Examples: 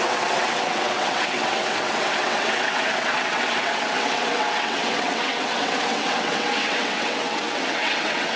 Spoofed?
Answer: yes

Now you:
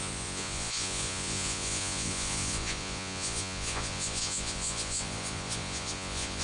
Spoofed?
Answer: yes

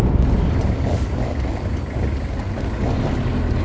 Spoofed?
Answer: no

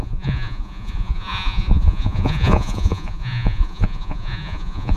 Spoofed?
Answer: yes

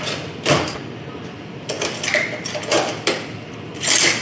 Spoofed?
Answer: no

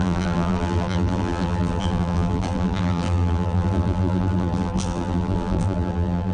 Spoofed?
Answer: yes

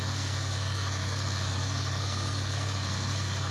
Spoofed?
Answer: yes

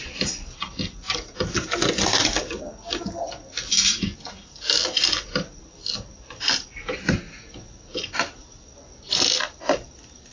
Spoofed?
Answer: no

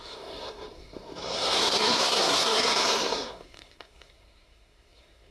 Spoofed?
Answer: yes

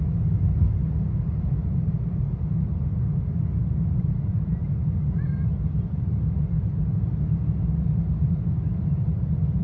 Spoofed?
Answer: no